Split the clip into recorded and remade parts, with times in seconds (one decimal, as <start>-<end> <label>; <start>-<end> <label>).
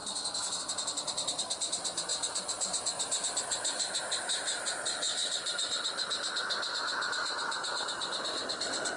0.0-9.0 recorded